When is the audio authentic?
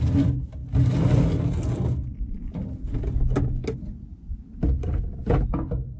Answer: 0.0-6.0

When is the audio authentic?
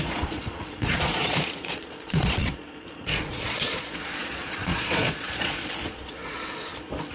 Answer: none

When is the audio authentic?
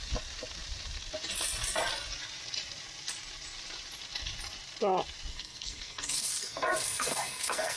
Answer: 0.0-5.3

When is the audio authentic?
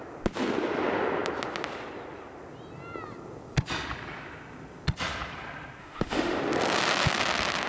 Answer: 0.0-5.8; 6.4-7.7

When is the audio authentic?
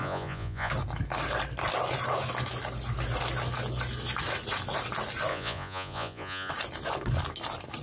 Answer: 0.7-5.3; 6.5-7.8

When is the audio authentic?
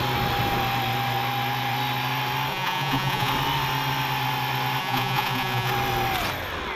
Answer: 0.0-2.5; 3.3-4.8; 5.7-6.8